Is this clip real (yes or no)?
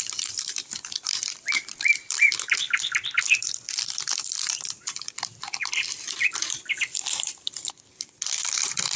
no